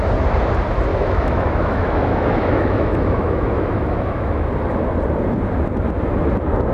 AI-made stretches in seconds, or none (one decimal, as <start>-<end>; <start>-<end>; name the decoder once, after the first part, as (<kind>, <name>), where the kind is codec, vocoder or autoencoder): 0.9-4.5 (autoencoder, DAC-VAE)